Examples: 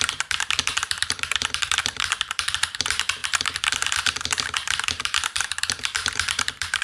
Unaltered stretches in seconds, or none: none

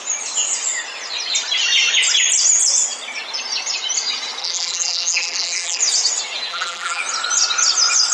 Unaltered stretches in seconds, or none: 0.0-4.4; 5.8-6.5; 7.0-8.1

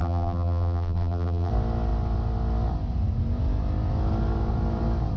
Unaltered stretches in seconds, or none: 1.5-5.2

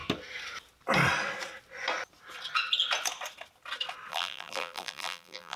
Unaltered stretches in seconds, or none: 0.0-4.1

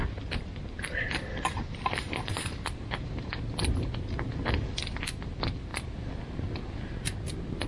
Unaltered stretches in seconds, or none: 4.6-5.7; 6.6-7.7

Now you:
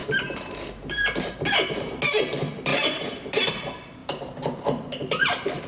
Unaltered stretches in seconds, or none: 1.4-2.7; 3.5-4.0

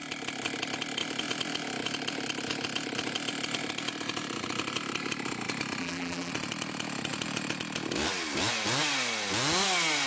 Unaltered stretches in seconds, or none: 0.0-5.8; 6.3-10.1

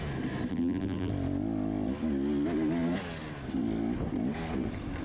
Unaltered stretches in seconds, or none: 0.0-0.5; 1.1-5.0